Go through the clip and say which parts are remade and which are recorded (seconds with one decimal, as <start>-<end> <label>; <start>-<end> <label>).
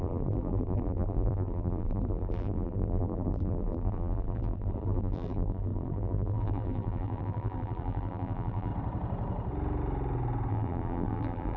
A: 0.0-8.7 remade; 8.7-10.5 recorded; 10.5-11.6 remade